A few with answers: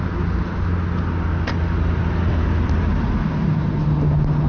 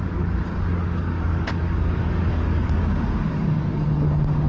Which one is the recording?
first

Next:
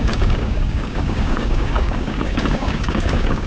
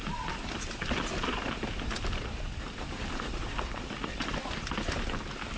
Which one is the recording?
second